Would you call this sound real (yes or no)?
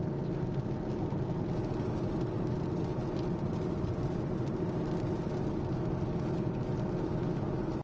yes